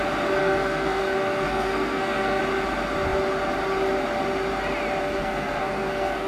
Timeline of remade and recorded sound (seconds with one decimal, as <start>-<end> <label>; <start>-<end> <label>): 0.0-0.4 recorded; 0.4-2.4 remade; 2.4-5.0 recorded; 5.0-6.3 remade